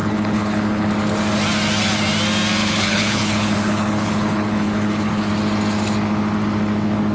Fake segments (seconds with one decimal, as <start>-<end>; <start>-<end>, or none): 0.0-0.9; 2.6-5.3